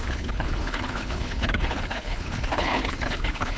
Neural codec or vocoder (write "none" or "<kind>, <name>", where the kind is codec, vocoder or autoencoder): codec, HILCodec